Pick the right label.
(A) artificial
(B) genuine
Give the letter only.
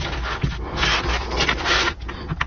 B